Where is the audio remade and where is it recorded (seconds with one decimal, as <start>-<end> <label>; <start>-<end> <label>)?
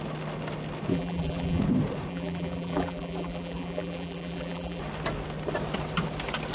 0.0-0.9 recorded; 0.9-1.6 remade; 1.6-2.1 recorded; 2.1-4.8 remade; 4.8-6.5 recorded